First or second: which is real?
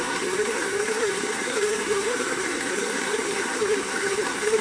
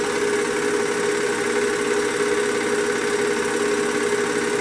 second